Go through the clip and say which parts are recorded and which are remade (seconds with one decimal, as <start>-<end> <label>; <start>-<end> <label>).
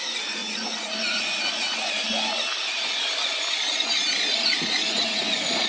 0.0-4.3 recorded; 4.3-5.7 remade